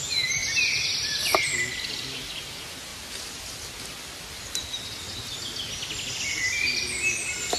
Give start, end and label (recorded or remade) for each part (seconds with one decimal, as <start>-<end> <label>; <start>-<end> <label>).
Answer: 0.0-7.6 recorded